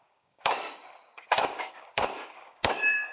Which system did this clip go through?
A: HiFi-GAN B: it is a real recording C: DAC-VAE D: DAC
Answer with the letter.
D